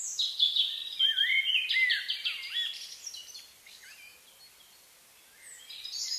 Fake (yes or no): no